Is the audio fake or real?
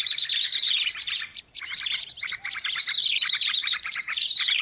fake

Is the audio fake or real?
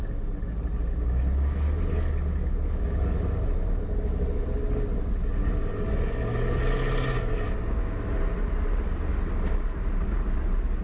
real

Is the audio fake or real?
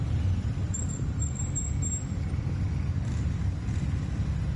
real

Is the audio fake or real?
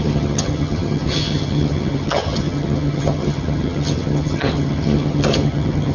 fake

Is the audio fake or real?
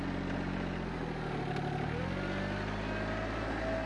real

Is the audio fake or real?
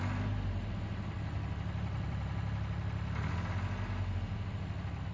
real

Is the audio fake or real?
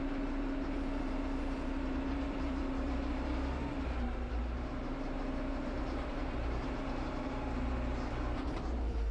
fake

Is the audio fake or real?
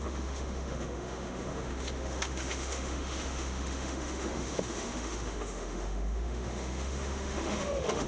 fake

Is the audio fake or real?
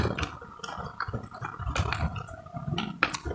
real